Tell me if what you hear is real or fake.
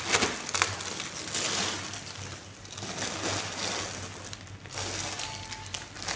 real